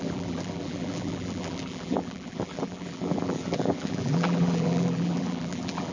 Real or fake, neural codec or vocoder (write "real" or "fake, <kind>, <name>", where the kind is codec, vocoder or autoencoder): fake, vocoder, BigVGAN v2